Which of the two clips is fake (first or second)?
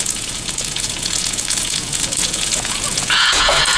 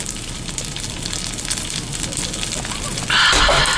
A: first